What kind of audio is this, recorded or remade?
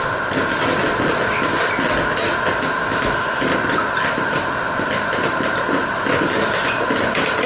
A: recorded